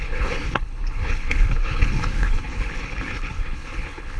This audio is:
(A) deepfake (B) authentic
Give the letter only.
A